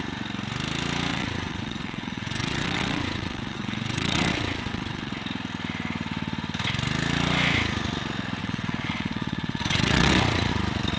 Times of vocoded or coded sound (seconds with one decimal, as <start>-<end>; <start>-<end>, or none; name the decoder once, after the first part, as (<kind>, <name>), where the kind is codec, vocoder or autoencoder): 1.1-5.1 (vocoder, WaveNeXt); 8.4-10.5